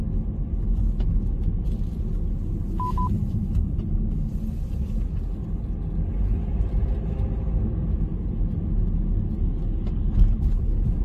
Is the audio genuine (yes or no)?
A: yes